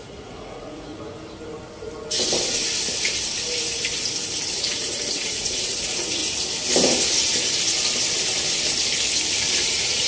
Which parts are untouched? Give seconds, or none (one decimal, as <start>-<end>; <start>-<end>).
0.9-4.5; 6.2-9.5